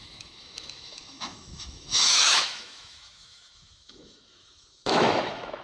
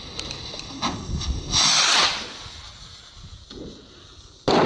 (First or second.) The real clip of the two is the second